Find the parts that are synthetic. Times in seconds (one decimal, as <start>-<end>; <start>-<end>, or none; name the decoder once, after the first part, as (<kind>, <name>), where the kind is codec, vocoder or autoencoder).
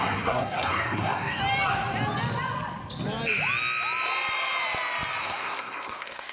0.0-1.4 (codec, SNAC); 5.2-6.3